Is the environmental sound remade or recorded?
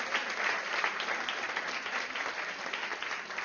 recorded